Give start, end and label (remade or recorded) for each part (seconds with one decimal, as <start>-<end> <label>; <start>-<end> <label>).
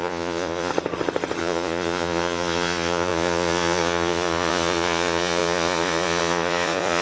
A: 0.0-0.7 remade; 0.7-1.4 recorded; 1.4-7.0 remade